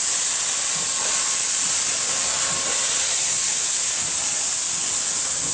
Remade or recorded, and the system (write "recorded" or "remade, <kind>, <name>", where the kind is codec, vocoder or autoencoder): recorded